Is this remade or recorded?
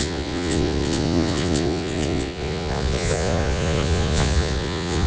remade